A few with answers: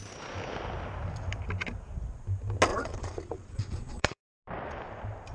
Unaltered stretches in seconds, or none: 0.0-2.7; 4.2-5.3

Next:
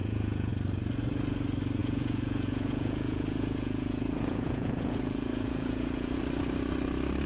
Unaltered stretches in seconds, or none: 0.5-1.8; 6.2-7.3

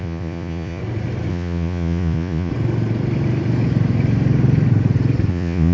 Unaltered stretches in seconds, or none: 0.8-1.3; 2.5-5.3

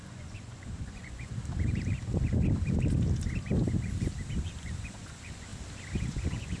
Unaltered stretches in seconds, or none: 1.4-4.4; 5.5-6.0